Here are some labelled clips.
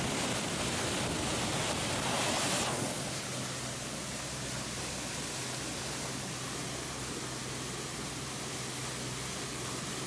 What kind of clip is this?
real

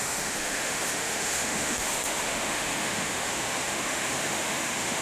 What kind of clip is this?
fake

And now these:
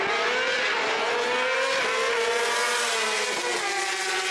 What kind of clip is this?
real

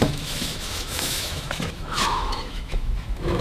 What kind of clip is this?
fake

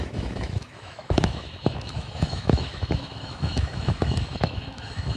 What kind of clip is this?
fake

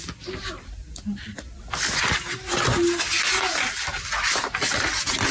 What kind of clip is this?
real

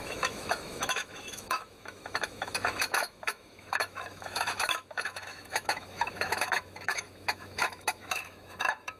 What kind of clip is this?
fake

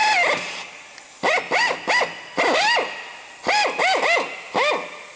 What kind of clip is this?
real